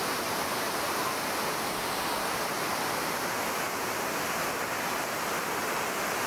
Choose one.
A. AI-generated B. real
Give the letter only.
B